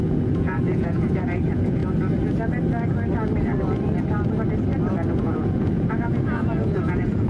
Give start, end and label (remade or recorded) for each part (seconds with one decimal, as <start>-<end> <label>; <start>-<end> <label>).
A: 0.0-1.8 remade; 1.8-5.1 recorded; 5.1-7.3 remade